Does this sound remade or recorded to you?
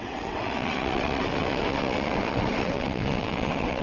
remade